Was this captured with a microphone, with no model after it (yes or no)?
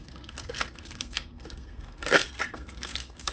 no